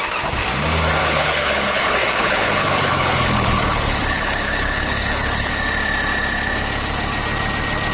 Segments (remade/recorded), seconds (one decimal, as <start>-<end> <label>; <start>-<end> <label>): 0.0-1.0 recorded; 1.0-5.5 remade; 5.5-7.9 recorded